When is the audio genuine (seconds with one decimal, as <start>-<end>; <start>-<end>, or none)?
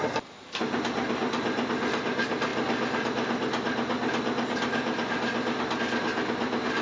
0.0-6.8